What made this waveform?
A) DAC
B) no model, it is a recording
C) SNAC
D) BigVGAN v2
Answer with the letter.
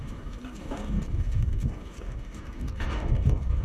A